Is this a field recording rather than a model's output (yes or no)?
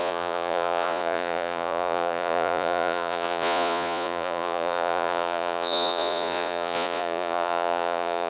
no